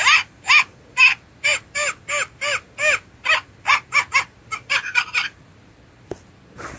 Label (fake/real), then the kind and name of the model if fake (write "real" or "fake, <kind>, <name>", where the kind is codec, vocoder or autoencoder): real